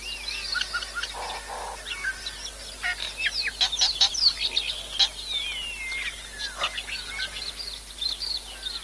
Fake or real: real